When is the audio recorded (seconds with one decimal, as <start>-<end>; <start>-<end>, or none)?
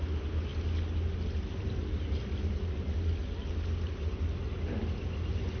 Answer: 0.0-5.6